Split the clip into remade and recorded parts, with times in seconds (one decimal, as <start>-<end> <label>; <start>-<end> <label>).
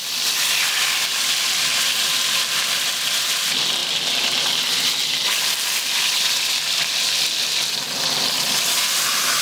0.0-3.8 recorded; 3.8-4.3 remade; 4.3-5.0 recorded; 5.0-6.9 remade; 6.9-9.4 recorded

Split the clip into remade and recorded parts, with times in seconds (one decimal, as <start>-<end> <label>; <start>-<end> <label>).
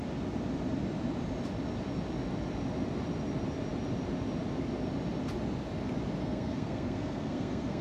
0.0-6.2 recorded; 6.2-7.8 remade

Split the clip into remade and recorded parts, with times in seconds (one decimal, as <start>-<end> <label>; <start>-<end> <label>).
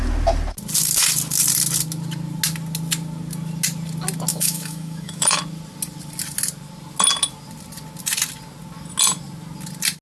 0.0-4.3 recorded; 4.3-5.4 remade; 5.4-10.0 recorded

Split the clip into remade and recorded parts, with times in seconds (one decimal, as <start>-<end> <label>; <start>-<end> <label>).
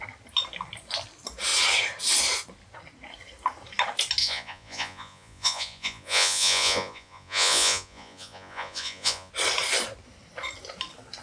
0.0-4.2 recorded; 4.2-9.3 remade; 9.3-11.2 recorded